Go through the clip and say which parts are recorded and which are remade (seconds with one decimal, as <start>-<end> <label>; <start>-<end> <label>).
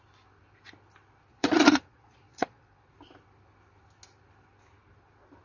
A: 0.0-1.3 recorded; 1.3-2.9 remade; 2.9-5.4 recorded